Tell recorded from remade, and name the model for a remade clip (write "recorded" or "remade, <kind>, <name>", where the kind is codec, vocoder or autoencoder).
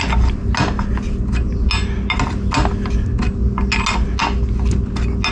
recorded